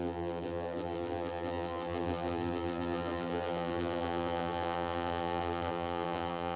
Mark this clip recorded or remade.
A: remade